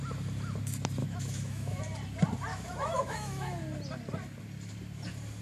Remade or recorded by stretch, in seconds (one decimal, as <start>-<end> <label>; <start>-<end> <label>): 0.0-1.0 recorded; 1.0-1.8 remade; 1.8-2.5 recorded; 2.5-3.6 remade; 3.6-5.4 recorded